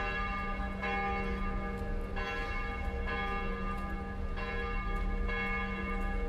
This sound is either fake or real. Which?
real